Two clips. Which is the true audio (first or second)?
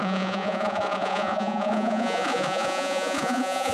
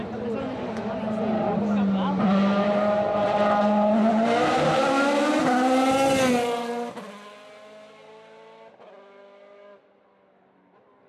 second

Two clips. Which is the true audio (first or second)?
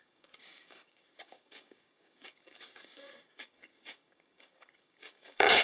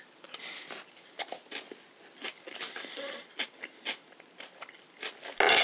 second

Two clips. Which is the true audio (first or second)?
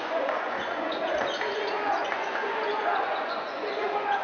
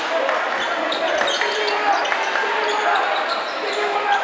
second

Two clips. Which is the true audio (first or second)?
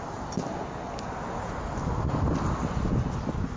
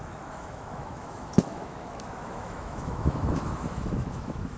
first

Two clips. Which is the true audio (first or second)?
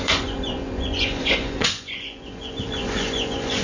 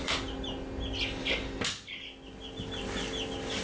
second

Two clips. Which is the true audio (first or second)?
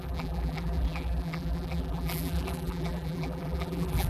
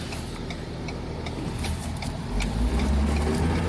second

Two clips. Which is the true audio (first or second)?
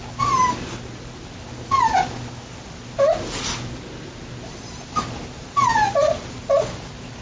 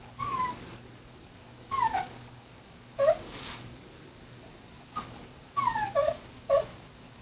first